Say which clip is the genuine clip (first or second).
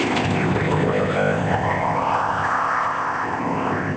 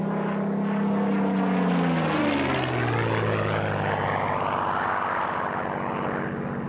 second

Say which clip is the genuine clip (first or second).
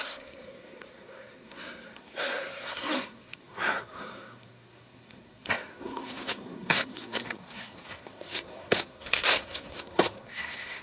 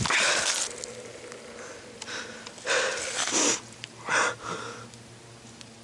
second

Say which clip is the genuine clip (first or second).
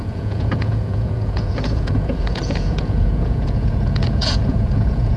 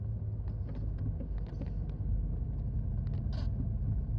second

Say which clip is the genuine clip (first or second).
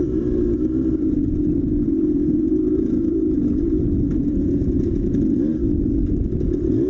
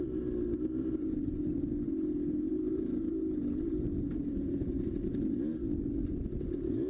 second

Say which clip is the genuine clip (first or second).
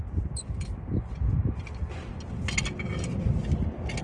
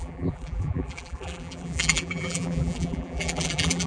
first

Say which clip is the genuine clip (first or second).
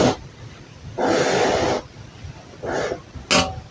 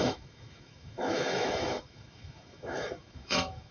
first